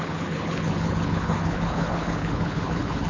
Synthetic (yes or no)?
yes